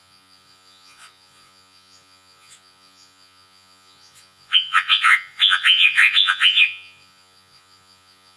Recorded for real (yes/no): no